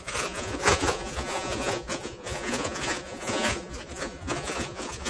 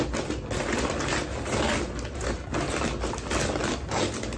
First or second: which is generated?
first